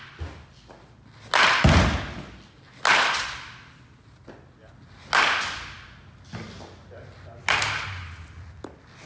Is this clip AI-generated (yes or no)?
no